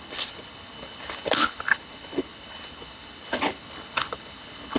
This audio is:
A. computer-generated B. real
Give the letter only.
A